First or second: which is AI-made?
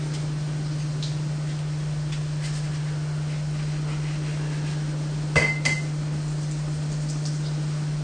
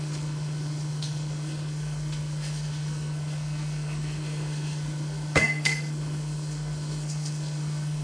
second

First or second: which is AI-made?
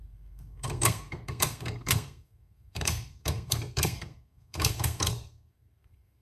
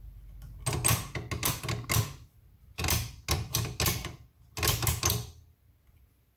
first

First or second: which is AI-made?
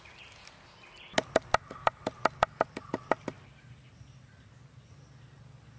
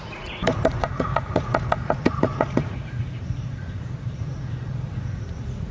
second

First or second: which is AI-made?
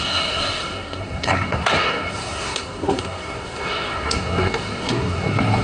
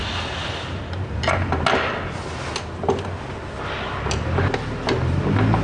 first